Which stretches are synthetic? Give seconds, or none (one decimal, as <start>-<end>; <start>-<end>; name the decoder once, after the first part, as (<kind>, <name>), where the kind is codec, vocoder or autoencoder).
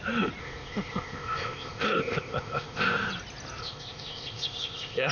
0.4-3.1 (codec, ZipCodec); 3.6-5.1